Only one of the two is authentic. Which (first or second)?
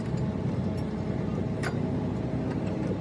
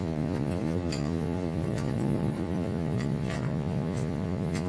first